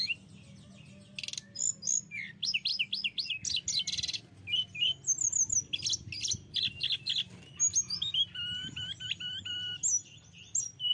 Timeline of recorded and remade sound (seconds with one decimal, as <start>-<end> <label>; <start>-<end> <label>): 0.0-10.9 recorded